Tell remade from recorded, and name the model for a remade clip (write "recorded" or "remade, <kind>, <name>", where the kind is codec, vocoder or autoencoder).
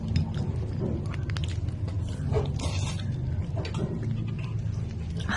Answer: recorded